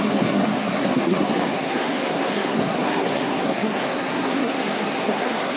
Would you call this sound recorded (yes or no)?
no